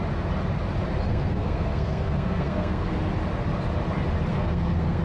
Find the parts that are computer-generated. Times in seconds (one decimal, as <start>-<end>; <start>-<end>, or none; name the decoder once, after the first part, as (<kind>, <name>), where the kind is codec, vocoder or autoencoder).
1.1-2.9 (codec, SNAC); 4.3-5.0